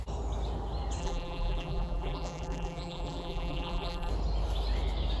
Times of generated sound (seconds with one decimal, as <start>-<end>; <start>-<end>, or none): 1.0-4.1